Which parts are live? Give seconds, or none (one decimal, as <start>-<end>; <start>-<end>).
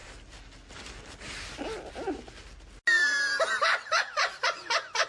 0.0-3.7